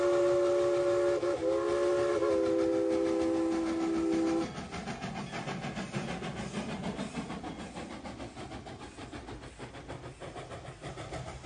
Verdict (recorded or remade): recorded